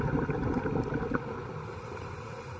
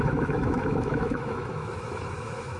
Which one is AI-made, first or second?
second